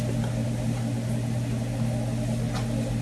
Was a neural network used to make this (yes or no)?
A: no